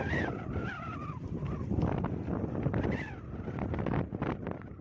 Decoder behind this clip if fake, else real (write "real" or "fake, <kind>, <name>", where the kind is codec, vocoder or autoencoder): real